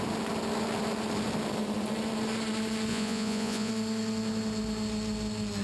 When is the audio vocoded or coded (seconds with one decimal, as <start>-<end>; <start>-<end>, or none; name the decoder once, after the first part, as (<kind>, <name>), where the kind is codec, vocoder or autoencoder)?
2.9-3.7 (vocoder, Vocos)